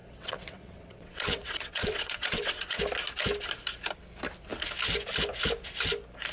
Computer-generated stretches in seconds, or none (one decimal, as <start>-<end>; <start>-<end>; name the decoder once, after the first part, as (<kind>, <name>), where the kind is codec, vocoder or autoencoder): 0.0-2.8 (vocoder, WaveNeXt)